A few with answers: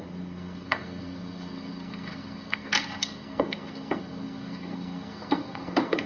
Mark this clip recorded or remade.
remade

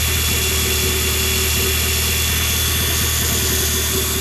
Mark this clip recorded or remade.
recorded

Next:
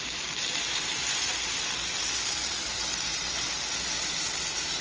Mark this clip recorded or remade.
recorded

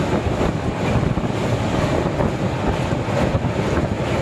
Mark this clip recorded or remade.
recorded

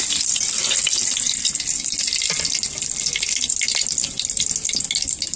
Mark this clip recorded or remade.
recorded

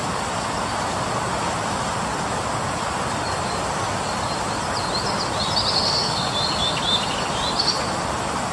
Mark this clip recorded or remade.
recorded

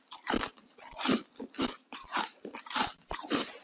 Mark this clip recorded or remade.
recorded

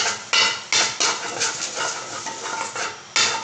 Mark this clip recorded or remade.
recorded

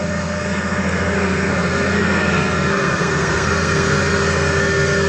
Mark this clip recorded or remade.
remade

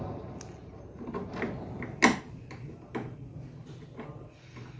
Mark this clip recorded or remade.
recorded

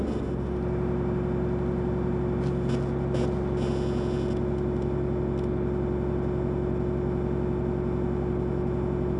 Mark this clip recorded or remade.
recorded